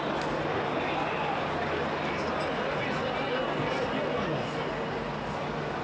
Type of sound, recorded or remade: recorded